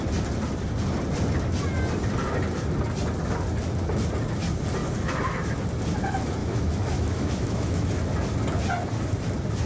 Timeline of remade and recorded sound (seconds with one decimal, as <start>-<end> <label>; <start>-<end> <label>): 0.0-6.4 recorded; 6.4-7.9 remade; 7.9-9.7 recorded